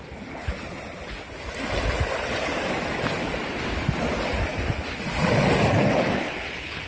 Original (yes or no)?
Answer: yes